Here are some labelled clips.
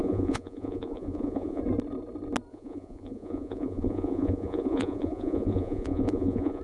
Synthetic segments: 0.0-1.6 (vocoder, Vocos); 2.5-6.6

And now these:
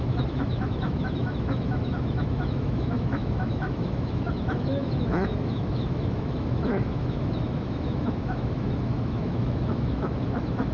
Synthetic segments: 0.0-10.7 (autoencoder, DAC-VAE)